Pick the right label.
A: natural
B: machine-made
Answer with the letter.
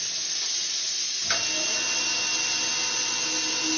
A